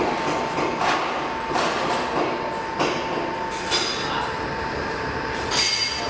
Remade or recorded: recorded